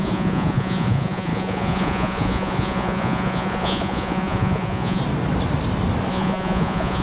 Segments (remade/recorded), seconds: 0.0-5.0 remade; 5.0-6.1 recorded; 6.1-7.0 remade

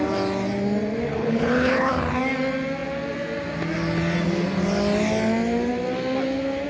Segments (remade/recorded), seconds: 0.0-1.1 recorded; 1.1-1.9 remade; 1.9-6.7 recorded

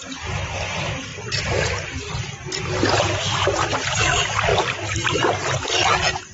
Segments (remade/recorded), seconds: 0.0-1.1 recorded; 1.1-2.0 remade; 2.0-4.5 recorded; 4.5-5.6 remade; 5.6-6.3 recorded

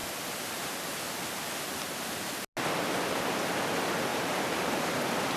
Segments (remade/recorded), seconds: 0.0-4.1 recorded; 4.1-4.9 remade; 4.9-5.4 recorded

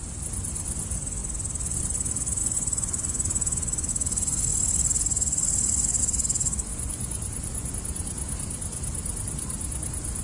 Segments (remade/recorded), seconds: 0.0-2.4 recorded; 2.4-3.9 remade; 3.9-6.7 recorded; 6.7-7.7 remade; 7.7-10.2 recorded

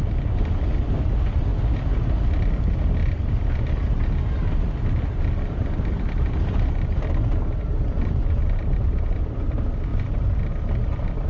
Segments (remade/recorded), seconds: 0.0-11.3 recorded

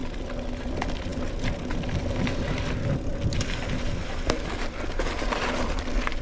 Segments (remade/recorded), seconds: 0.0-6.2 recorded